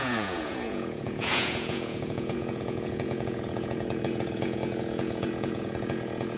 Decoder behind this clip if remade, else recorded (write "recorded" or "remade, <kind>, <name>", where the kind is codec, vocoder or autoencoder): remade, vocoder, Vocos